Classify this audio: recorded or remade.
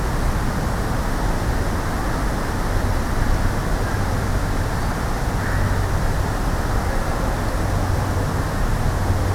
recorded